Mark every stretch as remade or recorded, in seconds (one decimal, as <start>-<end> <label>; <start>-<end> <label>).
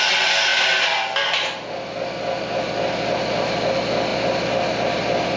0.0-5.4 recorded